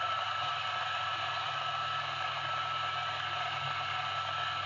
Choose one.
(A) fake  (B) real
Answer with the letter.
B